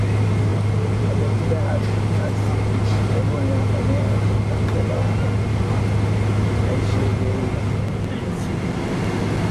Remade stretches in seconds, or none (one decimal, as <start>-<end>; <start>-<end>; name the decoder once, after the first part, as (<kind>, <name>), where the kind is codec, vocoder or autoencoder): none